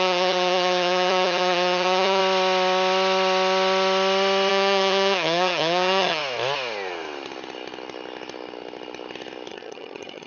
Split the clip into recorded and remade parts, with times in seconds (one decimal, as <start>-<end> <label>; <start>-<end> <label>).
0.0-2.2 remade; 2.2-4.5 recorded; 4.5-6.2 remade; 6.2-9.5 recorded; 9.5-10.3 remade